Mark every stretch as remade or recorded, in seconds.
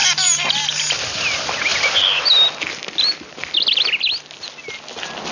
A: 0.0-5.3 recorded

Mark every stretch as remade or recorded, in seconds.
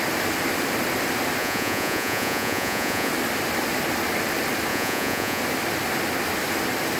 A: 0.0-1.4 recorded; 1.4-3.1 remade; 3.1-4.7 recorded; 4.7-5.4 remade; 5.4-7.0 recorded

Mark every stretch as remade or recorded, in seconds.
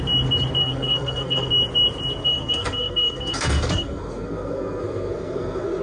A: 0.0-0.6 recorded; 0.6-1.5 remade; 1.5-2.2 recorded; 2.2-5.8 remade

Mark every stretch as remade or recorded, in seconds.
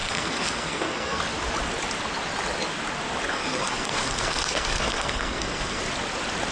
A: 0.0-1.2 remade; 1.2-3.3 recorded; 3.3-5.8 remade; 5.8-6.5 recorded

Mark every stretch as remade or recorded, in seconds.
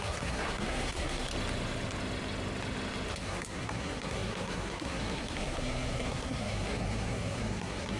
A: 0.0-1.3 remade; 1.3-3.1 recorded; 3.1-8.0 remade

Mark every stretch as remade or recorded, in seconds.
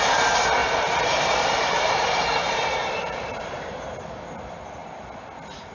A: 0.0-0.6 recorded; 0.6-4.0 remade; 4.0-5.7 recorded